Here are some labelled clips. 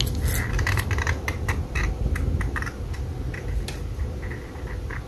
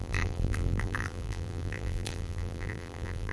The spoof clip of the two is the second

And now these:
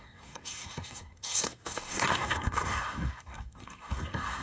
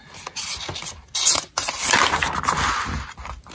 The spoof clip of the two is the first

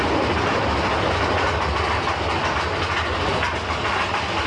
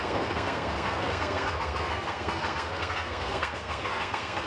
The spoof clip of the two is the second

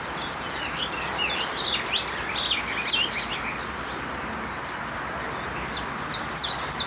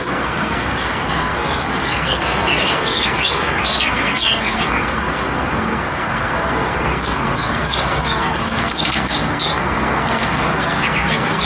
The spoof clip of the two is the second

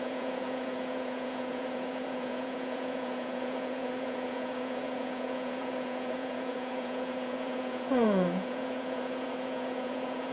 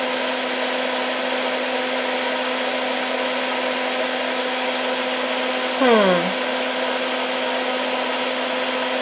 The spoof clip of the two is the first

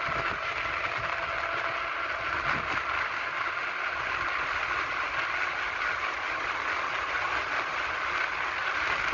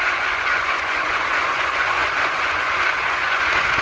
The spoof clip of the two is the second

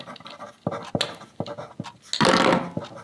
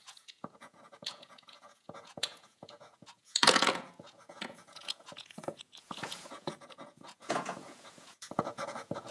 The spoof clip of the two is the second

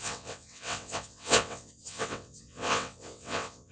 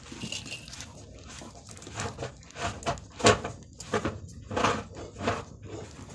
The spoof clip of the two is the first